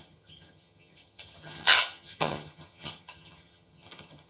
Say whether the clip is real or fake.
fake